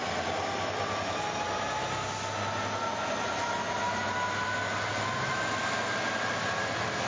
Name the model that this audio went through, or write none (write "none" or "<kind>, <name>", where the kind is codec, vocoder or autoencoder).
none